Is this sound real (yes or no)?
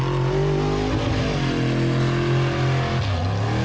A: yes